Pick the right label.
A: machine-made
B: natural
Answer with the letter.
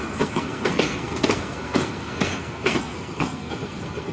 A